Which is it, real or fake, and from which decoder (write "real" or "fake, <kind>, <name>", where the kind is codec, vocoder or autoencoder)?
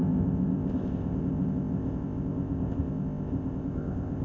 fake, codec, ZipCodec